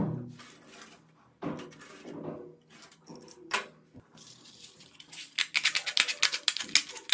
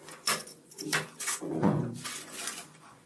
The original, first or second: first